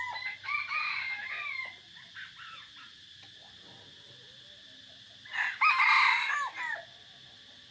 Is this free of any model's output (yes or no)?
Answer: yes